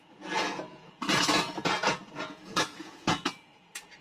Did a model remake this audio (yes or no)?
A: yes